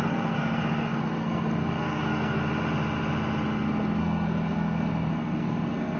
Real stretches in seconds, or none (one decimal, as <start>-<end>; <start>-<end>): 2.4-4.0

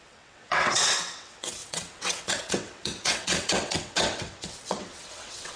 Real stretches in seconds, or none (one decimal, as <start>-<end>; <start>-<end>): none

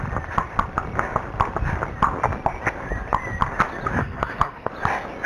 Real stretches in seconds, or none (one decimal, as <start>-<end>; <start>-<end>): 0.0-4.0; 4.7-5.3

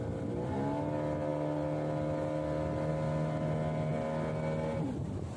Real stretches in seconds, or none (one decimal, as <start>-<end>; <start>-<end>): 0.0-5.4

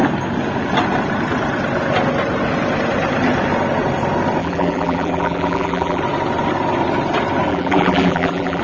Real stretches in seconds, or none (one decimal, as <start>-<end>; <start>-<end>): 0.0-4.4; 6.0-7.5

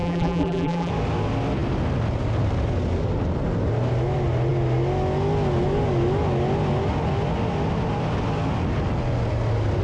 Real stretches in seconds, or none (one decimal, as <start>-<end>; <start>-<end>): 0.9-9.8

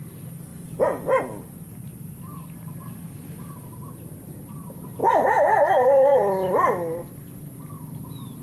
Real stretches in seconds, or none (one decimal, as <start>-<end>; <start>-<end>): 0.0-5.0; 5.7-8.4

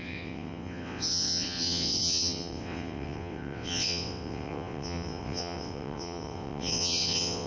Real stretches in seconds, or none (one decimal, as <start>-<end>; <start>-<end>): none